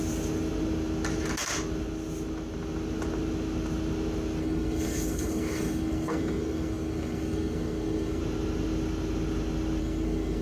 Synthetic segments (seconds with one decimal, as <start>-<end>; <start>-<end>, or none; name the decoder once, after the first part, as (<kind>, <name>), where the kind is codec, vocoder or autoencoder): 4.4-8.2 (codec, SNAC); 9.8-10.4